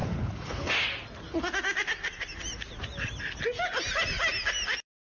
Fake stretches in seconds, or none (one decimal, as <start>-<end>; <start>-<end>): 0.0-0.7